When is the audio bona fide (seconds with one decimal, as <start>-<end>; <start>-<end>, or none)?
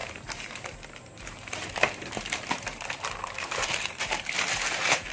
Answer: none